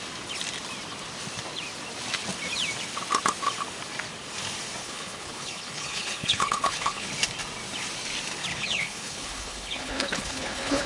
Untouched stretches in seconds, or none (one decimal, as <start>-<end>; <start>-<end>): 0.0-4.8; 7.1-8.5